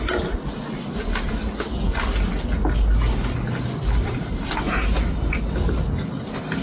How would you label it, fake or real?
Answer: real